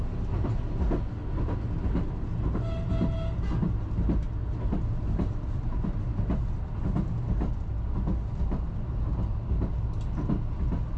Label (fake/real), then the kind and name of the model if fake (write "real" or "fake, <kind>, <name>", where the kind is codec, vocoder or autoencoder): real